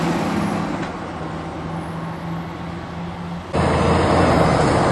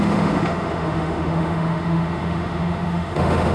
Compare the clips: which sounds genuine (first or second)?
first